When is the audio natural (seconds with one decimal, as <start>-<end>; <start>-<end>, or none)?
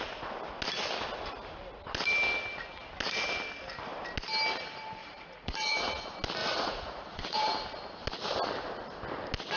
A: 0.0-5.0; 6.0-6.4; 7.5-9.6